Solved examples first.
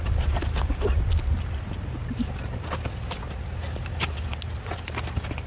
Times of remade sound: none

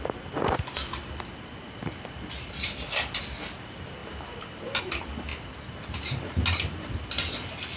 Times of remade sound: none

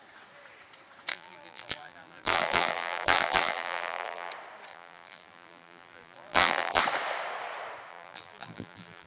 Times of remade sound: 1.1-4.3; 4.7-6.8; 7.9-9.1

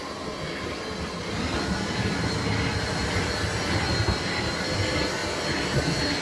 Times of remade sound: none

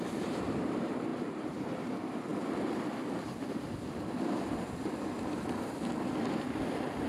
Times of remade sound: 1.1-1.9

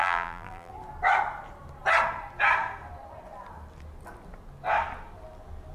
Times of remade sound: 0.0-0.7

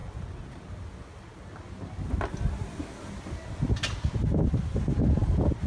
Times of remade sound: none